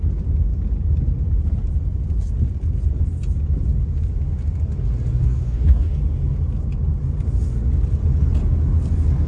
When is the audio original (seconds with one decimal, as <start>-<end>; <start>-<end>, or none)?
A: 0.0-5.1; 6.0-9.3